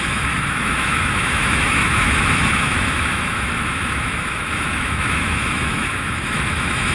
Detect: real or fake fake